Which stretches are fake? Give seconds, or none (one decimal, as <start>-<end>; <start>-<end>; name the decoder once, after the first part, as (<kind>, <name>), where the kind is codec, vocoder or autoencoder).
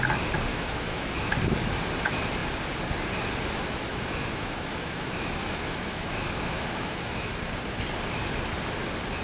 0.5-1.3 (autoencoder, DAC-VAE); 3.9-7.3